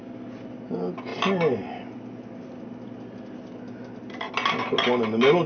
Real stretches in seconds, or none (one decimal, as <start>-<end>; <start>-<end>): 0.0-5.5